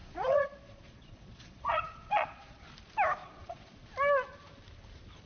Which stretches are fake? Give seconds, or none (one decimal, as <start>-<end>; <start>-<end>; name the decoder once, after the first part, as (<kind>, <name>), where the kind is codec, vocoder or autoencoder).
0.0-2.6 (vocoder, Vocos); 3.2-3.9